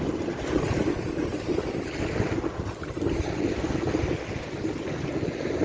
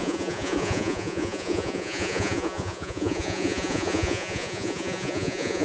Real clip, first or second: first